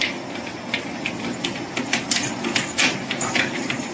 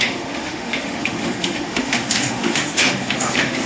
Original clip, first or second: first